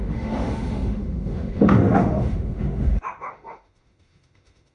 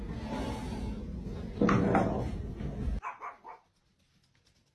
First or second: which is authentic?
second